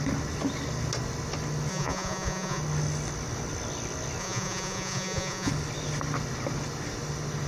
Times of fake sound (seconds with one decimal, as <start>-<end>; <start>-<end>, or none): 1.7-2.6; 4.2-5.5